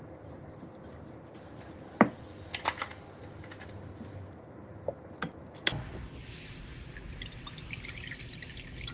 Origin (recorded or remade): recorded